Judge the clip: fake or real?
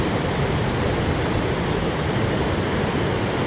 fake